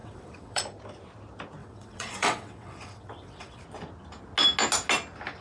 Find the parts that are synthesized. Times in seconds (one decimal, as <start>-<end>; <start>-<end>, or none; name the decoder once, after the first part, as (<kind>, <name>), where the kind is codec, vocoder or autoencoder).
0.0-0.6 (vocoder, WaveNeXt); 1.6-3.6